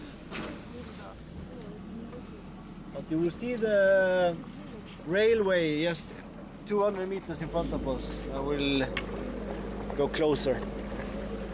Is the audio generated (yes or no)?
no